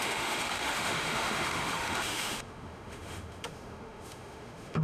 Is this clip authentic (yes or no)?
no